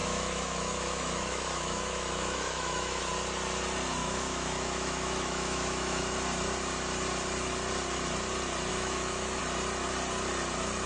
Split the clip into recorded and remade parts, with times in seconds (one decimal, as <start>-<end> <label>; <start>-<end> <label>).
0.0-3.0 remade; 3.0-4.0 recorded; 4.0-6.0 remade; 6.0-8.7 recorded; 8.7-9.4 remade; 9.4-10.9 recorded